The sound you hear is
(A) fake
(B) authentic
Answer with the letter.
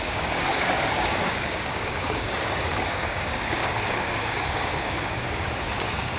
A